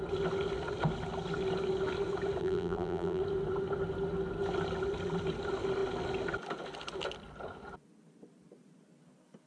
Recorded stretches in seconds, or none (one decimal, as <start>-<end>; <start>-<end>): 0.0-2.4; 3.2-9.5